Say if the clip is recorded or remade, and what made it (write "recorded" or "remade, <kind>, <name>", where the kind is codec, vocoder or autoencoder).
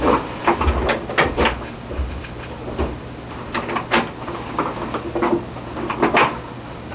recorded